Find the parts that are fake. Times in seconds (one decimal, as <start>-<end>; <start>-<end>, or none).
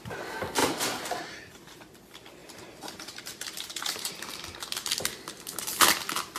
0.6-1.9; 2.4-4.1